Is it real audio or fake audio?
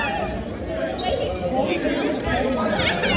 real